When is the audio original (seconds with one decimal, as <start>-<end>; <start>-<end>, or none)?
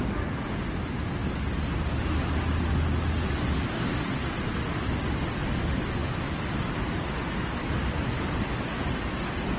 0.0-9.6